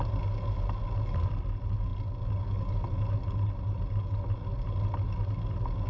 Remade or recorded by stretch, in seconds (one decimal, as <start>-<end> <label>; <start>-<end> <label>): 0.0-5.9 recorded

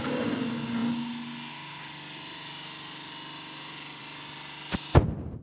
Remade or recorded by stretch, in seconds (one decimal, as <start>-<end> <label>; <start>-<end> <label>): 0.0-5.4 recorded

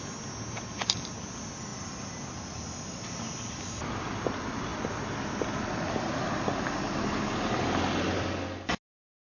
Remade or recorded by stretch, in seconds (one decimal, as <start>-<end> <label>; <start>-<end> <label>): 0.0-9.2 recorded

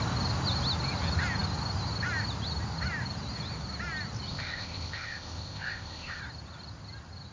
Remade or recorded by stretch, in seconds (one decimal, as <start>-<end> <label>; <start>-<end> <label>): 0.0-4.3 recorded; 4.3-6.2 remade; 6.2-7.3 recorded

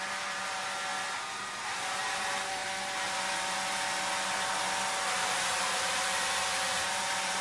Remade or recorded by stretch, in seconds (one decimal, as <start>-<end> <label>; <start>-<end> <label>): 0.0-0.9 remade; 0.9-1.6 recorded; 1.6-2.6 remade; 2.6-5.7 recorded; 5.7-7.4 remade

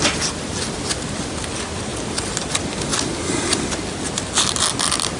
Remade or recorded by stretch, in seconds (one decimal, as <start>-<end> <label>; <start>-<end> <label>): 0.0-5.2 recorded